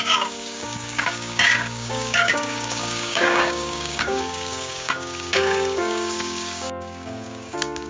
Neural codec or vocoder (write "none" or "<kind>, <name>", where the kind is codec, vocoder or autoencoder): codec, DAC